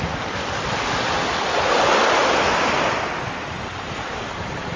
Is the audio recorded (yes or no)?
yes